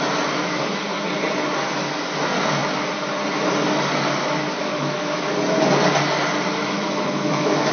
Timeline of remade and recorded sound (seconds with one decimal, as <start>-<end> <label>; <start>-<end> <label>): 0.0-4.6 recorded; 4.6-5.2 remade; 5.2-6.6 recorded; 6.6-7.7 remade